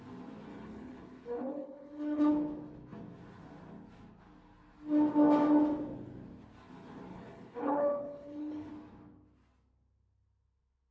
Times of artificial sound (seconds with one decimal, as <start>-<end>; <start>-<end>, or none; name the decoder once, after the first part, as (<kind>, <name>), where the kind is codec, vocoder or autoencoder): 0.5-2.3 (codec, HILCodec); 7.1-8.7